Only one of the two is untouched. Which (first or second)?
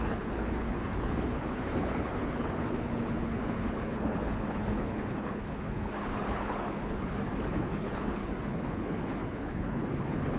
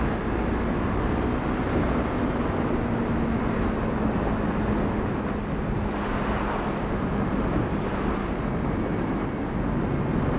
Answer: second